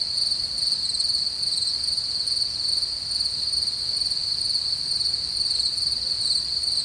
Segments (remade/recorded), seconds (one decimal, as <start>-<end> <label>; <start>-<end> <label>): 0.0-6.8 recorded

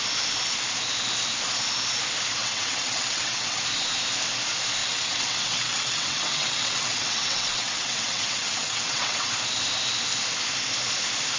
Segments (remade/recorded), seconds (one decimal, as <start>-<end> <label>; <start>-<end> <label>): 0.0-2.4 recorded; 2.4-3.6 remade; 3.6-4.8 recorded; 4.8-9.3 remade; 9.3-11.4 recorded

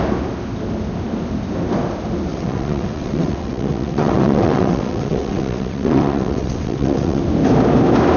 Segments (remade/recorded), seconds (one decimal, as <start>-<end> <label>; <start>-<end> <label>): 0.0-2.3 recorded; 2.3-7.2 remade; 7.2-8.2 recorded